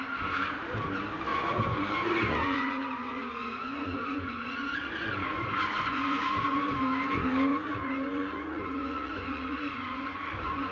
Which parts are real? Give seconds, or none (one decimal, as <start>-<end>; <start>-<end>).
0.0-1.3; 6.6-7.5